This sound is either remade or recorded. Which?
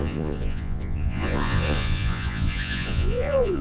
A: remade